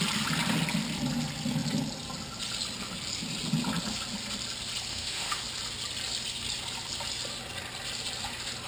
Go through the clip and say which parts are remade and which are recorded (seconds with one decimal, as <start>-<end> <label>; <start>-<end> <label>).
0.0-4.9 recorded; 4.9-5.4 remade; 5.4-8.7 recorded